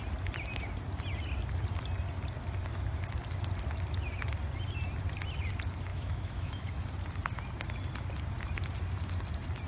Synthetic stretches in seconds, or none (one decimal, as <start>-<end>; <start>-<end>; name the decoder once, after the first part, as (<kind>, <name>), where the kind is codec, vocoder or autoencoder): 5.9-6.7 (autoencoder, DAC-VAE)